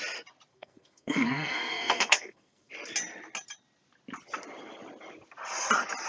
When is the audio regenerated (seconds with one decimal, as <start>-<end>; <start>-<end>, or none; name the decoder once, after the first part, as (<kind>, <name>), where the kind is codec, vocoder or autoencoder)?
0.5-2.7 (codec, SNAC)